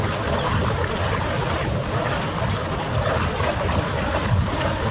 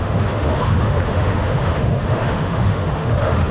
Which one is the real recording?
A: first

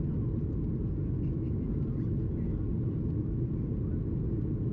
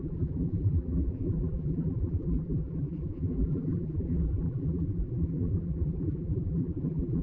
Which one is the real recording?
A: first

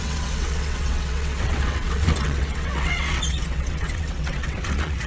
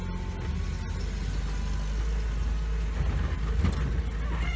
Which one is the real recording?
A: second